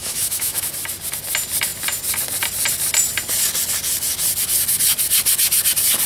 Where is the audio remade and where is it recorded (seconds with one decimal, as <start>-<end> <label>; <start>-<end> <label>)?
0.0-0.7 remade; 0.7-6.1 recorded